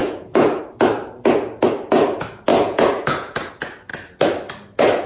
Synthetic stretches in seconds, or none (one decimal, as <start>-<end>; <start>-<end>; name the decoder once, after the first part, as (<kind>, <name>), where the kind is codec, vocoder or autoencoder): 0.0-0.6 (vocoder, Vocos); 2.5-3.5